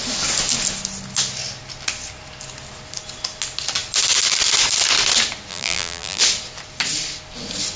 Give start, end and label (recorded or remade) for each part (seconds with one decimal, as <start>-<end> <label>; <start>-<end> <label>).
0.0-5.5 recorded; 5.5-6.2 remade; 6.2-7.8 recorded